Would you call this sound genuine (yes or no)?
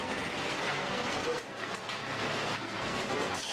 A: no